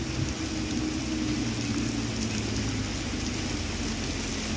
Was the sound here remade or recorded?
recorded